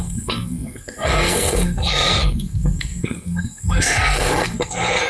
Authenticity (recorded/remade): remade